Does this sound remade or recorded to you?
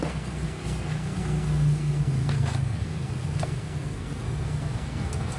remade